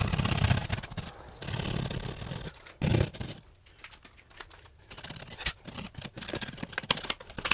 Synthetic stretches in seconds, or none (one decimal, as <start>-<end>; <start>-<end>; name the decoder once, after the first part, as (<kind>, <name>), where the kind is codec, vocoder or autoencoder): 0.0-0.6 (vocoder, BigVGAN v2); 2.3-2.9; 5.3-7.5